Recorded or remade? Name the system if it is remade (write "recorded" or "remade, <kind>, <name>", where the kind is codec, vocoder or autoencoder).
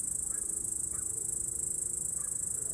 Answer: recorded